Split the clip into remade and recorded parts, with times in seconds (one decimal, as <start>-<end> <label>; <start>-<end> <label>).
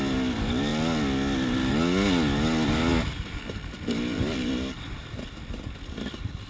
0.0-6.5 recorded